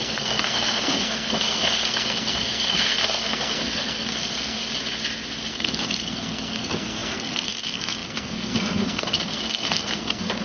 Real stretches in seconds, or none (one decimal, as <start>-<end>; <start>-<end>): 4.6-5.5